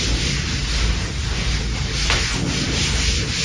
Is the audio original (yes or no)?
yes